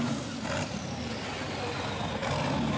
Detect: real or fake real